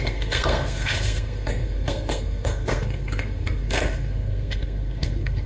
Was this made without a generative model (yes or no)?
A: no